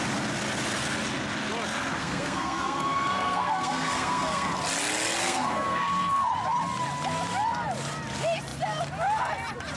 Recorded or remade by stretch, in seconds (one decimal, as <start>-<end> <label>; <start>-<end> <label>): 0.0-2.0 recorded; 2.0-4.5 remade; 4.5-5.2 recorded; 5.2-6.3 remade; 6.3-9.8 recorded